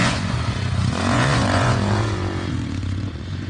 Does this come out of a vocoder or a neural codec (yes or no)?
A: yes